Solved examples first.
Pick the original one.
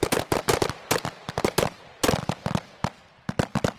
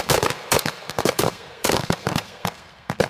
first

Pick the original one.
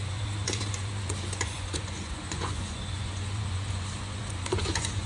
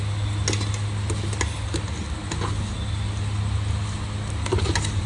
second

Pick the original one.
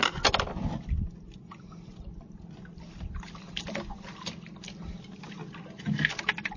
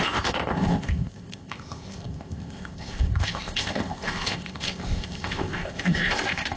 first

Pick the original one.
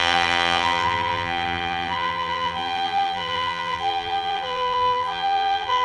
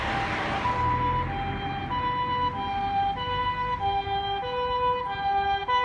second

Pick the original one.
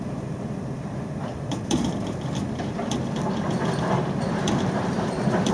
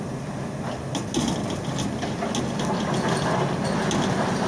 second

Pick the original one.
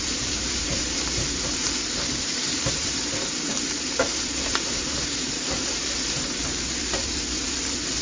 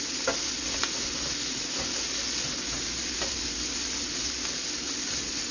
second